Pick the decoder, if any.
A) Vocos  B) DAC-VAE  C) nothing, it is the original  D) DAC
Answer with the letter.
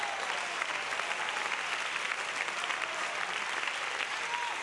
C